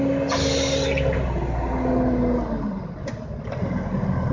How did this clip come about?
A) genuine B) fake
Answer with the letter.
A